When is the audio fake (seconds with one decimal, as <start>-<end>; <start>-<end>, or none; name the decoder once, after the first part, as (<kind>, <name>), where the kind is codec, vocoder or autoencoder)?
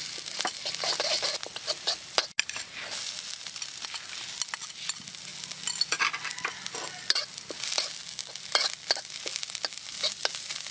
none